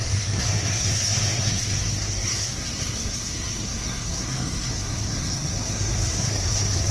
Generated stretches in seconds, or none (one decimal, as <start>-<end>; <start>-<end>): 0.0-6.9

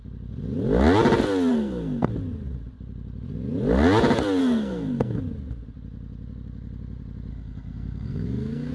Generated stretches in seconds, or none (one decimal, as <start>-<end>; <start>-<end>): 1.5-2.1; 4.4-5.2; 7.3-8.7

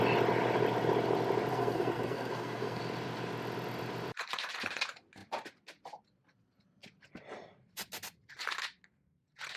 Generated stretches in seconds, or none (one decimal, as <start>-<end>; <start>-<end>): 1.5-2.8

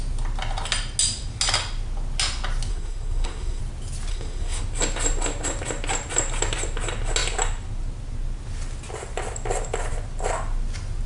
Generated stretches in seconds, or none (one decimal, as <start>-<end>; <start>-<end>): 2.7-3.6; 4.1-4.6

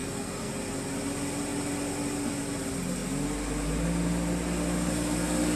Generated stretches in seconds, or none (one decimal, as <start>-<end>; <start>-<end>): 0.0-0.5